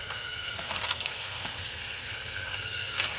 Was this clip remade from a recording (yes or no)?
yes